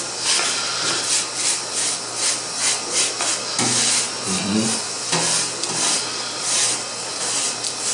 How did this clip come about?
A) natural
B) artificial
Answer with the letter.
A